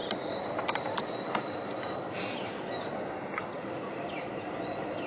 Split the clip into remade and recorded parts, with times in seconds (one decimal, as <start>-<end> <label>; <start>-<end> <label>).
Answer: 0.0-5.1 remade

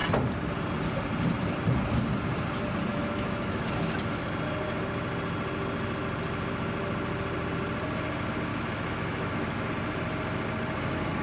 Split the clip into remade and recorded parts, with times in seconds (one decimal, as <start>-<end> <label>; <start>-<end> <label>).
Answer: 0.0-2.9 recorded; 2.9-3.7 remade; 3.7-8.5 recorded; 8.5-9.7 remade; 9.7-11.2 recorded

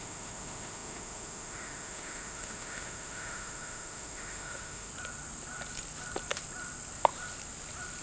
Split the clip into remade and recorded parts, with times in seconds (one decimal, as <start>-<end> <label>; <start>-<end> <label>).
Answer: 0.0-4.9 remade; 4.9-8.0 recorded

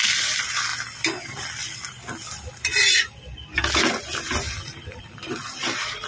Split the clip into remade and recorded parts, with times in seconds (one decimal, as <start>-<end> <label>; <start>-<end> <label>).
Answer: 0.0-6.1 recorded

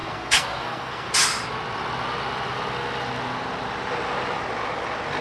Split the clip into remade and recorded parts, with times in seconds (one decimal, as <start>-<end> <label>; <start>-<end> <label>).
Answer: 0.0-1.1 remade; 1.1-5.2 recorded

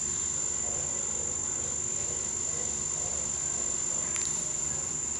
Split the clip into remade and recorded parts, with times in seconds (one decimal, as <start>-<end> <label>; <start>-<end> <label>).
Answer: 0.0-5.2 recorded

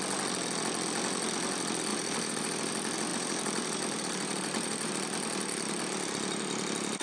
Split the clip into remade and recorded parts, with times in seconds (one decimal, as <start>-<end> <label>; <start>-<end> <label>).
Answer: 0.0-1.9 recorded; 1.9-2.7 remade; 2.7-3.1 recorded; 3.1-4.9 remade; 4.9-7.0 recorded

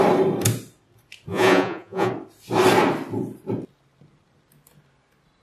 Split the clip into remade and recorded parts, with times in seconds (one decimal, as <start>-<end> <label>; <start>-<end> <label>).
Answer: 0.0-1.3 recorded; 1.3-2.1 remade; 2.1-5.4 recorded